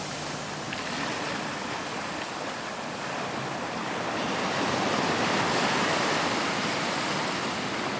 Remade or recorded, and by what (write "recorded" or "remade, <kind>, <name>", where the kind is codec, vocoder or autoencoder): recorded